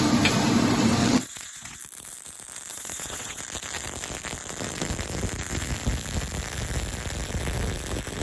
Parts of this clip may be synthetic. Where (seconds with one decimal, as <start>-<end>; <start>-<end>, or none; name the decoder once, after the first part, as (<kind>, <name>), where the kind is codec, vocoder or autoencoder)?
1.0-1.8 (vocoder, WaveNeXt); 2.7-3.4